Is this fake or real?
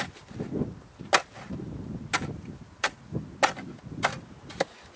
real